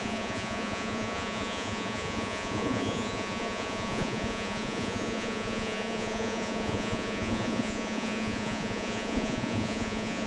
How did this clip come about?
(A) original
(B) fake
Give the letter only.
B